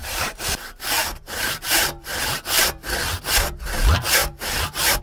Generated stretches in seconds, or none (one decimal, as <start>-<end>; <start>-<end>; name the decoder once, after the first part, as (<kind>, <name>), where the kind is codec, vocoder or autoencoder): 0.0-3.0 (vocoder, BigVGAN v2); 4.2-5.0